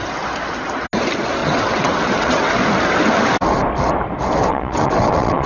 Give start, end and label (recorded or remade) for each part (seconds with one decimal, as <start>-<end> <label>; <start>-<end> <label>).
0.0-1.4 recorded; 1.4-2.5 remade; 2.5-4.5 recorded; 4.5-5.5 remade